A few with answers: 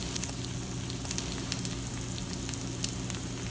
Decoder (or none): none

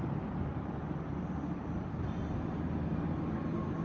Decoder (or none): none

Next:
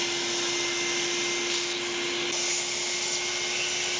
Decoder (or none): none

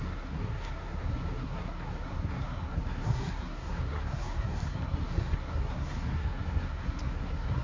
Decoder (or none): codec, SNAC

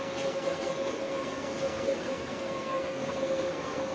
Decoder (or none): codec, SNAC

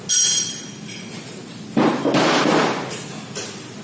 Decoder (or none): none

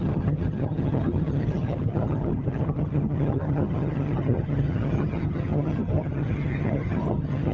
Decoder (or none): vocoder, HiFi-GAN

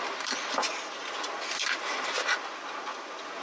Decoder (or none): none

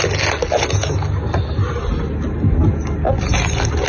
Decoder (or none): none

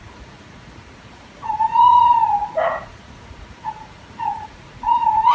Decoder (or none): vocoder, Vocos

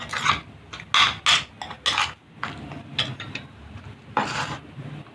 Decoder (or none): none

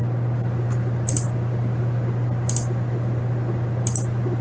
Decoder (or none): none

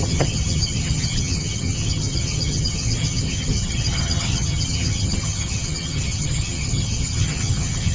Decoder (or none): vocoder, HiFi-GAN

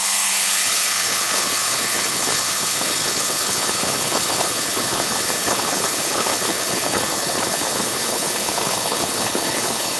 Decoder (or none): codec, HILCodec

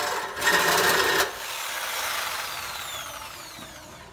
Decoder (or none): none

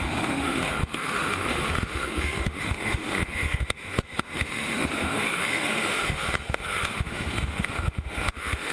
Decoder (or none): autoencoder, DAC-VAE